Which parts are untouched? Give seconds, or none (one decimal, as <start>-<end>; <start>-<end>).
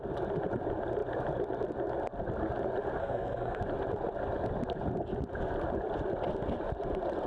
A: 0.0-3.0; 3.6-7.3